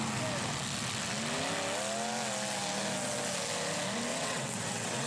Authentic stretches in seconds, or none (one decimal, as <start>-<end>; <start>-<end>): 0.0-4.1